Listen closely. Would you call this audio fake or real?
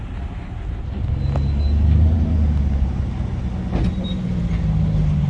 real